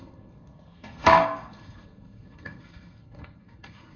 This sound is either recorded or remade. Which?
remade